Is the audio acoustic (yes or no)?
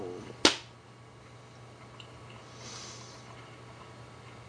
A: yes